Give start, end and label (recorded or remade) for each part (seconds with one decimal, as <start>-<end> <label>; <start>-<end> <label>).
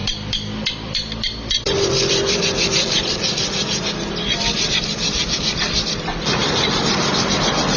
0.0-7.8 remade